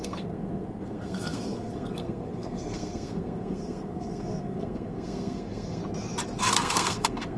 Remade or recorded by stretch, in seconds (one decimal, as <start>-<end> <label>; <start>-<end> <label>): 0.0-5.8 remade; 5.8-6.4 recorded; 6.4-7.4 remade